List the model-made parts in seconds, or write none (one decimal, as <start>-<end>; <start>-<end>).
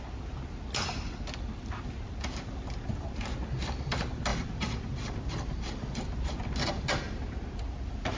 4.3-6.0